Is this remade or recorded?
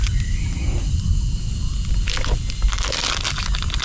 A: recorded